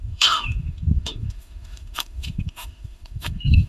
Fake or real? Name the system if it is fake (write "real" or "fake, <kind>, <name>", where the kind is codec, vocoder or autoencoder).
fake, autoencoder, DAC-VAE